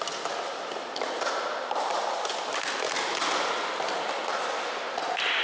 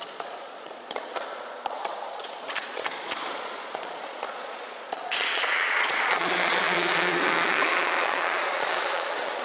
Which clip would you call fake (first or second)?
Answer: second